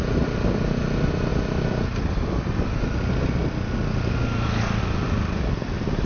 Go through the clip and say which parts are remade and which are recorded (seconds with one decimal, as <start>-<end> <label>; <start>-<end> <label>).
0.0-6.1 recorded